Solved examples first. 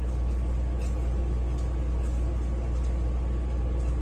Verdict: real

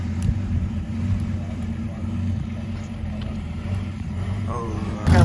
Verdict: fake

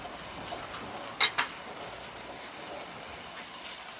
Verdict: real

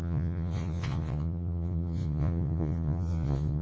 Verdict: fake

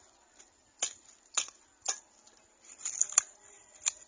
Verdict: real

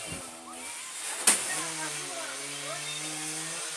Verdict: real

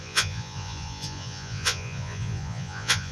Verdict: fake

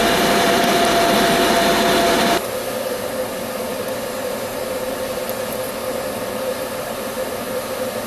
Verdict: fake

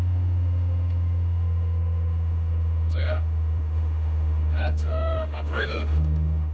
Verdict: fake